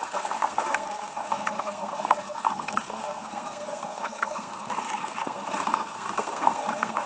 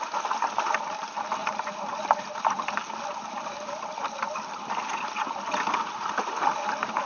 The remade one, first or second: first